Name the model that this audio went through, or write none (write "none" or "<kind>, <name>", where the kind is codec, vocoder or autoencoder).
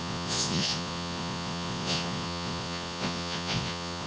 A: vocoder, Vocos